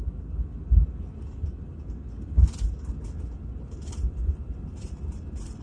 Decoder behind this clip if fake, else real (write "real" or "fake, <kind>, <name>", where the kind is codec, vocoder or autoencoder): real